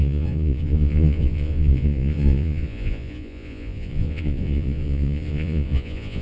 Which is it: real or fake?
fake